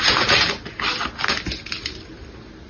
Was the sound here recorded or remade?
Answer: recorded